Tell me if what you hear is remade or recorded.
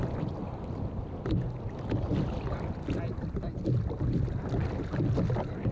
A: recorded